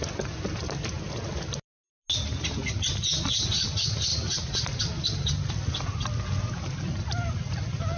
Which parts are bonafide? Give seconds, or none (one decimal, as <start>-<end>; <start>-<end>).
0.0-4.1; 5.5-8.0

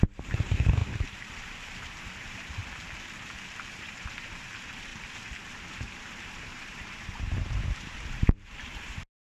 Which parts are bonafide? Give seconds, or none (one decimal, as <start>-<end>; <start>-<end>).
2.6-3.7; 4.9-5.6

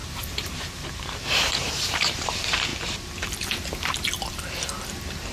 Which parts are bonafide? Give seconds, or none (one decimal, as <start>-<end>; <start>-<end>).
2.7-3.7

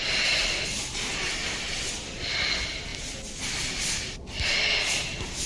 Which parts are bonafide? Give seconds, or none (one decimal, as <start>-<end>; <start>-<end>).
0.0-1.4; 1.9-5.5

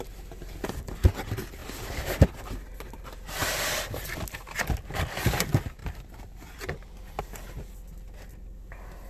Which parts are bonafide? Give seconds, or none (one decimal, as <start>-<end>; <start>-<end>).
0.0-1.6; 2.2-5.8; 7.2-9.1